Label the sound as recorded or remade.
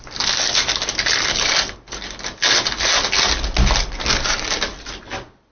recorded